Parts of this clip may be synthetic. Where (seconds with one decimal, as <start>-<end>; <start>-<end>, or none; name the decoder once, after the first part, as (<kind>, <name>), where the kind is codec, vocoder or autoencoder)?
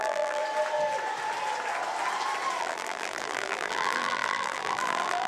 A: 0.0-0.4 (vocoder, BigVGAN v2); 2.6-5.3